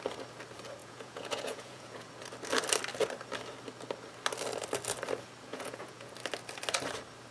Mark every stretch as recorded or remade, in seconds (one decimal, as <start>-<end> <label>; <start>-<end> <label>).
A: 0.0-0.8 recorded; 0.8-2.1 remade; 2.1-5.5 recorded; 5.5-6.1 remade; 6.1-7.3 recorded

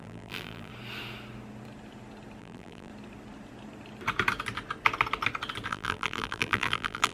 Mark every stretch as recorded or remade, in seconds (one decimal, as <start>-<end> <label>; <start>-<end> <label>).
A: 0.0-0.7 remade; 0.7-2.4 recorded; 2.4-2.9 remade; 2.9-5.7 recorded; 5.7-7.1 remade